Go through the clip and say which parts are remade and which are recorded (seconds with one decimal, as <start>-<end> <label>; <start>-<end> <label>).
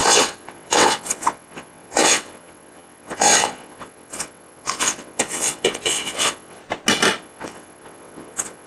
0.0-6.6 remade; 6.6-7.2 recorded; 7.2-8.7 remade